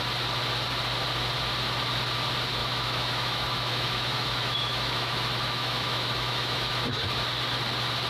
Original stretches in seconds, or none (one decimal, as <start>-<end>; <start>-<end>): 0.0-2.6; 6.7-8.1